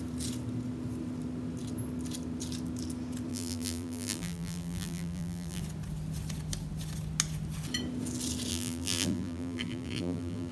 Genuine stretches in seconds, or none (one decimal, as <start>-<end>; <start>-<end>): 0.0-3.3; 5.6-8.5